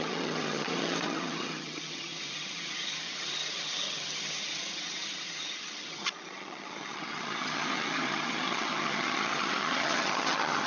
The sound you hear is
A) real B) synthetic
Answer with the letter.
B